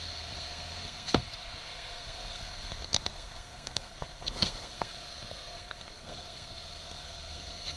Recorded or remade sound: remade